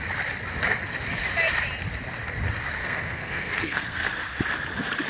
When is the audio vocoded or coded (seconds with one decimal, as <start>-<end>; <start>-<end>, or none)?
2.8-4.1